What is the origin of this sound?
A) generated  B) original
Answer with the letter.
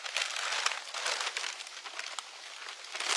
B